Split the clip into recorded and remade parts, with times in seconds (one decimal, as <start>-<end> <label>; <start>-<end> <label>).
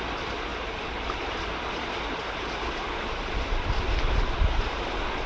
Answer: 0.0-5.3 recorded